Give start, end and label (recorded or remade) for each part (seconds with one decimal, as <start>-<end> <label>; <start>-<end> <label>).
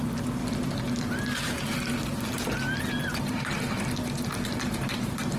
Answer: 0.0-5.4 recorded